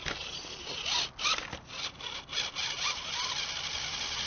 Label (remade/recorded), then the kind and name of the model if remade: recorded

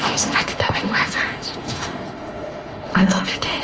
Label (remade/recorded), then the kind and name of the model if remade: remade, autoencoder, DAC-VAE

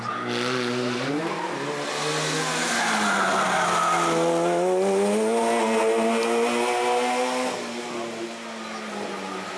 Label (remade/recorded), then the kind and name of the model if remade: recorded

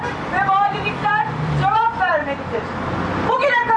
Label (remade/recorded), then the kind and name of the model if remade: remade, vocoder, BigVGAN v2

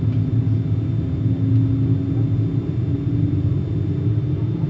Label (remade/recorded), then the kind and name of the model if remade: recorded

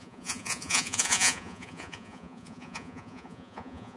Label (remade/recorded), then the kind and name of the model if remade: remade, vocoder, Vocos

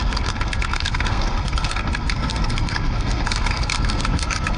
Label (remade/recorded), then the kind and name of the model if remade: remade, codec, SNAC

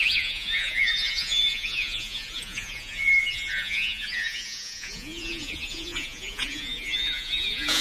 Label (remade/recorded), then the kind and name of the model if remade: remade, vocoder, Vocos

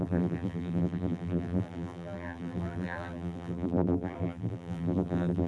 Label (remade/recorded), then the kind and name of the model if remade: remade, vocoder, BigVGAN v2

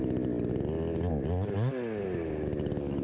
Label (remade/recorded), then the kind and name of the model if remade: recorded